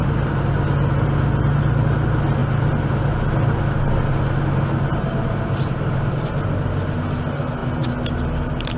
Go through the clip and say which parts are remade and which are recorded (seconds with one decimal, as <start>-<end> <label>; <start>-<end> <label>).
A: 0.0-8.8 recorded

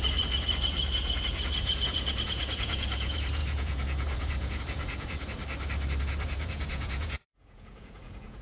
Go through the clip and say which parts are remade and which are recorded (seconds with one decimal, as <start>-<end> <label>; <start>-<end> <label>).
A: 0.0-5.4 remade; 5.4-6.0 recorded; 6.0-8.4 remade

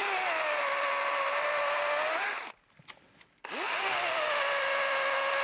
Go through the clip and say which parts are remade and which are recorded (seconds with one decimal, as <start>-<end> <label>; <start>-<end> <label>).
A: 0.0-5.4 recorded

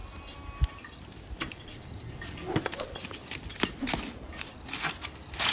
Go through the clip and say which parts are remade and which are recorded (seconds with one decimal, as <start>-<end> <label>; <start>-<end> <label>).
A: 0.0-5.5 recorded

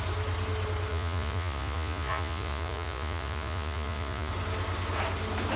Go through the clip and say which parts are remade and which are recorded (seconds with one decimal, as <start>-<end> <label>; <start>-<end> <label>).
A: 0.0-0.9 recorded; 0.9-4.3 remade; 4.3-5.6 recorded